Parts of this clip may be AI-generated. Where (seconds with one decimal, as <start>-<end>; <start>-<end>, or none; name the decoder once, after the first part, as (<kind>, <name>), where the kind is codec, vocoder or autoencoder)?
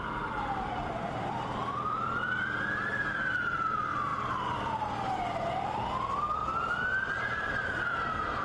0.0-6.4 (vocoder, BigVGAN v2); 7.6-8.4